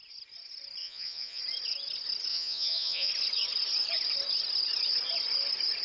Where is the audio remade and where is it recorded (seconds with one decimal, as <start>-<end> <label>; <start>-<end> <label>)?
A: 0.0-0.8 recorded; 0.8-1.4 remade; 1.4-2.3 recorded; 2.3-3.1 remade; 3.1-5.8 recorded